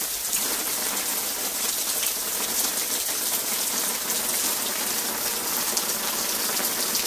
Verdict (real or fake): real